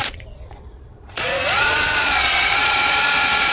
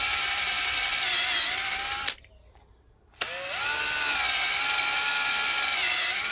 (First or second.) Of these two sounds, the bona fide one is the second